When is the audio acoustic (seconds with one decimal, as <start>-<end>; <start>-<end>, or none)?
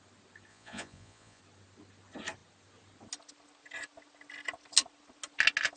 0.0-0.5; 1.4-5.8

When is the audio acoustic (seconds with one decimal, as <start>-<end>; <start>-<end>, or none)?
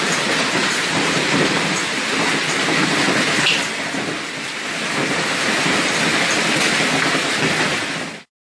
0.0-0.6; 2.0-8.4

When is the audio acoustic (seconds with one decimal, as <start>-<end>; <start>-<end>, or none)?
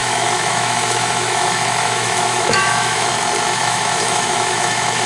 3.1-3.6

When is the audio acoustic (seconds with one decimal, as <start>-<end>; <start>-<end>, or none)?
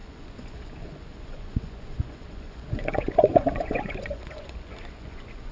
none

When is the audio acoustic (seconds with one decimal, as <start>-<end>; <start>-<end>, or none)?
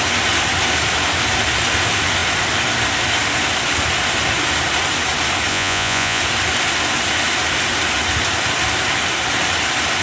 0.0-5.5; 6.2-10.0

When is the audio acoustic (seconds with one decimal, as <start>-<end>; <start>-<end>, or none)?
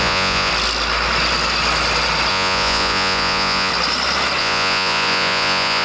0.5-2.3; 3.7-4.4